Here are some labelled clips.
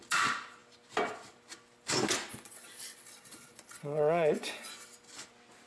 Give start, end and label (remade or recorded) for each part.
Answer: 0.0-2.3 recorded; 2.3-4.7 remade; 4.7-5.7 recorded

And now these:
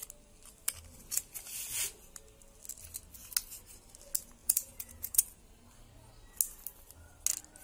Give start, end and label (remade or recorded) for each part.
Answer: 0.0-4.4 recorded; 4.4-5.2 remade; 5.2-7.6 recorded

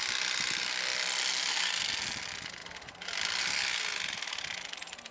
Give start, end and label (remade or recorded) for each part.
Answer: 0.0-5.1 recorded

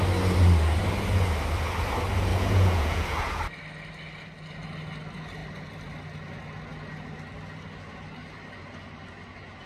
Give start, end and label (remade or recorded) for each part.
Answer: 0.0-2.3 recorded; 2.3-3.4 remade; 3.4-9.7 recorded